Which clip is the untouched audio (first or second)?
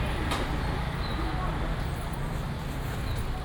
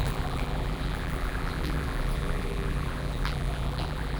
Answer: first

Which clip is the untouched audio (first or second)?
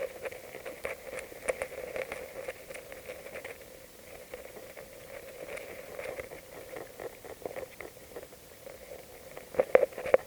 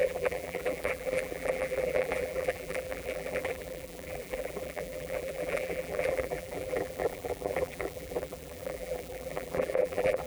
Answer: first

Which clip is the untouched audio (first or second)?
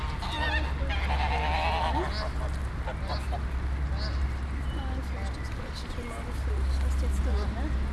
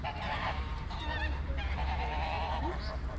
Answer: first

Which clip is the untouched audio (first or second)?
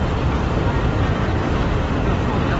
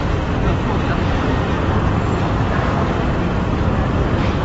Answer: second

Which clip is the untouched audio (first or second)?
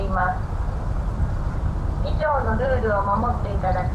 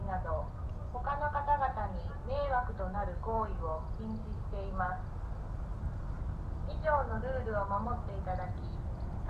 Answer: second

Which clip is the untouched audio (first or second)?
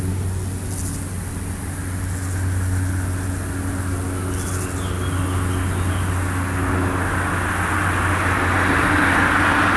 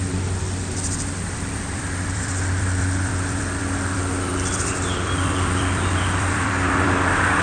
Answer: first